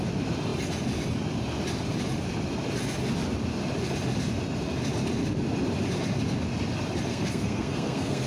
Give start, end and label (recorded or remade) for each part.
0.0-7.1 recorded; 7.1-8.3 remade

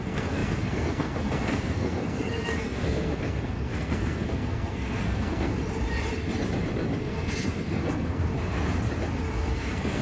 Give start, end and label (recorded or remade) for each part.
0.0-5.5 remade; 5.5-7.0 recorded; 7.0-8.3 remade; 8.3-9.3 recorded; 9.3-10.0 remade

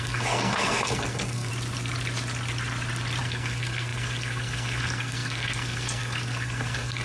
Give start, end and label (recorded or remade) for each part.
0.0-1.5 remade; 1.5-3.2 recorded; 3.2-7.0 remade

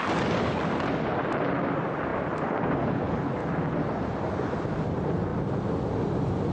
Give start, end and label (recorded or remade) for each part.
0.0-6.5 recorded